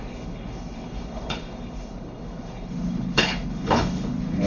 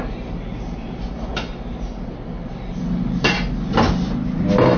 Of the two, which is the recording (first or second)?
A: second